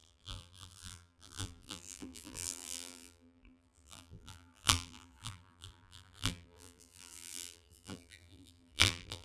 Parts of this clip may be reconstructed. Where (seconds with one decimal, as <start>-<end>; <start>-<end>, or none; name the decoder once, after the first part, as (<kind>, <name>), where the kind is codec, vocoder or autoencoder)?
0.0-9.2 (vocoder, BigVGAN v2)